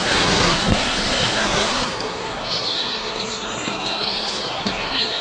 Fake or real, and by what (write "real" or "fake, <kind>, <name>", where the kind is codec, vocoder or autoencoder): fake, codec, SNAC